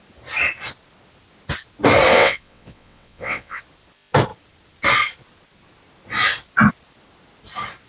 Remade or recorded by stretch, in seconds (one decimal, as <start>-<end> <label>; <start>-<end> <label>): 0.0-2.1 recorded; 2.1-3.6 remade; 3.6-7.9 recorded

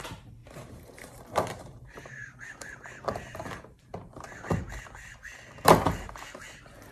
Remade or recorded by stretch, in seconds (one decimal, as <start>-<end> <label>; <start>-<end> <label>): 0.0-0.4 recorded; 0.4-4.5 remade; 4.5-6.9 recorded

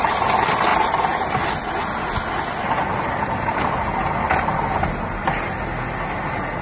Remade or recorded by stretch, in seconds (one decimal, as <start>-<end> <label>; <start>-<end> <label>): 0.0-6.6 recorded

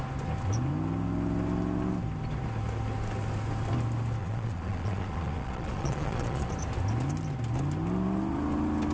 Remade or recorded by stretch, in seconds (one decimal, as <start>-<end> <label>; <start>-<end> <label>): 0.0-4.2 recorded; 4.2-6.5 remade; 6.5-8.9 recorded